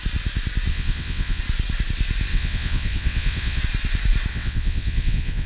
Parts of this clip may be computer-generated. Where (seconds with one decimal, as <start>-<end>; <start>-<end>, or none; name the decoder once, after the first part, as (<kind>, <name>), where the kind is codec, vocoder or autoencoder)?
0.7-1.4 (vocoder, WaveNeXt); 2.3-3.6; 4.3-5.5